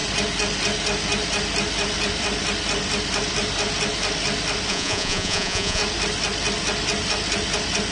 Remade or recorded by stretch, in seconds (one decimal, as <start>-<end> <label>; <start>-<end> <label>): 0.0-4.7 recorded; 4.7-5.8 remade; 5.8-7.9 recorded